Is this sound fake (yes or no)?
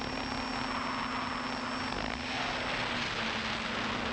no